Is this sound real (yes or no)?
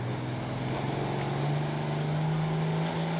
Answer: yes